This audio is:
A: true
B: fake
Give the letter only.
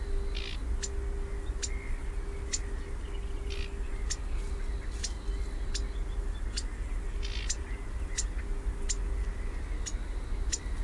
A